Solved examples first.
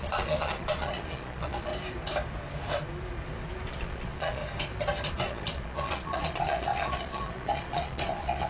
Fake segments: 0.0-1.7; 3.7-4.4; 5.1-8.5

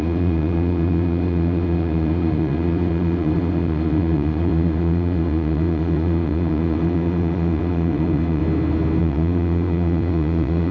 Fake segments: 0.0-8.4; 9.0-10.7